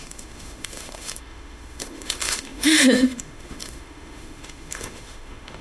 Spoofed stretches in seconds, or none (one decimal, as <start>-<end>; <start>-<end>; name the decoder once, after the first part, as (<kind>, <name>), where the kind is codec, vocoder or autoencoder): 0.0-5.6 (autoencoder, DAC-VAE)

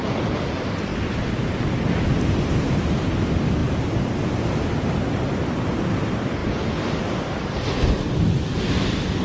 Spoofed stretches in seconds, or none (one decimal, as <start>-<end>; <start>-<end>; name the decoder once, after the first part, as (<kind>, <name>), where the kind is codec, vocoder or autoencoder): 0.9-1.5 (vocoder, BigVGAN v2); 3.6-4.2